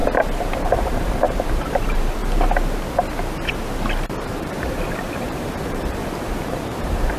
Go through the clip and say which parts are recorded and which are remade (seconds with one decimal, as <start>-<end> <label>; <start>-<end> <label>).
0.0-0.6 recorded; 0.6-2.2 remade; 2.2-4.2 recorded; 4.2-6.0 remade; 6.0-6.5 recorded; 6.5-7.2 remade